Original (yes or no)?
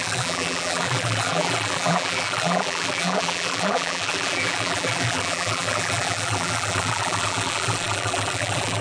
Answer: no